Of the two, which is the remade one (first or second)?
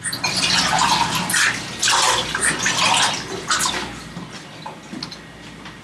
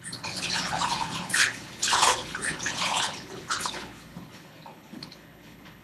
second